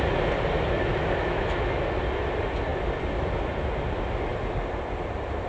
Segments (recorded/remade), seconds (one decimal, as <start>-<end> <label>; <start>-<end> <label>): 0.0-0.9 recorded; 0.9-1.8 remade; 1.8-5.5 recorded

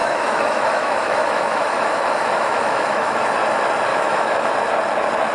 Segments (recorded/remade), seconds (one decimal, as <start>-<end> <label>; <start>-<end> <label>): 0.0-3.2 remade; 3.2-3.9 recorded; 3.9-4.5 remade; 4.5-5.3 recorded